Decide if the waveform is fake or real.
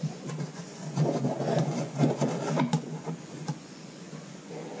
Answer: fake